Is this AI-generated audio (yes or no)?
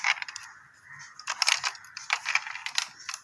no